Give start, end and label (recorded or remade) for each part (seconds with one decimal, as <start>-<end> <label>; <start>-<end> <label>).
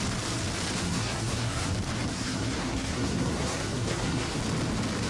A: 0.0-0.8 recorded; 0.8-1.7 remade; 1.7-2.1 recorded; 2.1-4.4 remade; 4.4-5.1 recorded